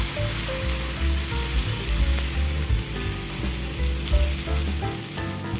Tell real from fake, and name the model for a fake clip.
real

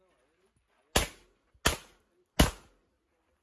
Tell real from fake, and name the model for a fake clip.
real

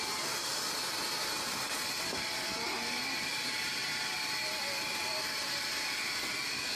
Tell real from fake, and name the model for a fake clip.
real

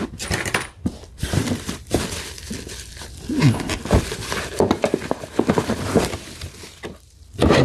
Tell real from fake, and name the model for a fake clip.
fake, vocoder, BigVGAN v2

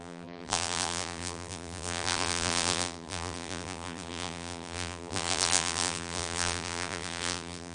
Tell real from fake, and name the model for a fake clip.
fake, vocoder, BigVGAN v2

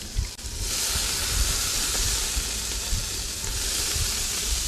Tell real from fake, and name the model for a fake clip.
real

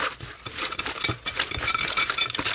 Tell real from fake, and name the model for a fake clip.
fake, vocoder, BigVGAN v2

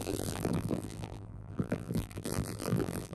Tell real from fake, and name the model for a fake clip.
fake, vocoder, BigVGAN v2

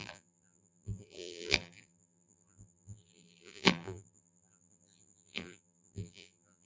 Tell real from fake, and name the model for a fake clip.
fake, vocoder, BigVGAN v2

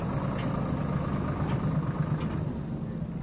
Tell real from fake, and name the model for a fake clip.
real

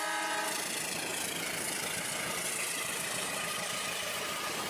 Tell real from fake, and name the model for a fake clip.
fake, vocoder, BigVGAN v2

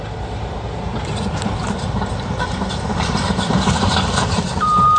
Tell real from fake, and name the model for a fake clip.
fake, vocoder, BigVGAN v2